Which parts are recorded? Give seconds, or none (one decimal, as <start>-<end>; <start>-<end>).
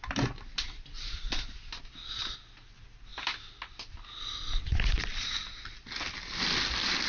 0.0-7.1